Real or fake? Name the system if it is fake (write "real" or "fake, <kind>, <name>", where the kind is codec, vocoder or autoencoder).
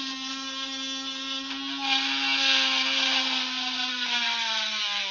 real